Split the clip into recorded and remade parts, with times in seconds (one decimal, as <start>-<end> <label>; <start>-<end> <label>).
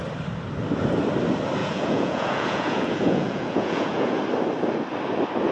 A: 0.0-1.6 recorded; 1.6-4.2 remade; 4.2-5.5 recorded